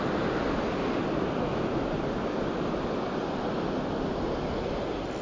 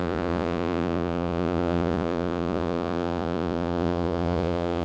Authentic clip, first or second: first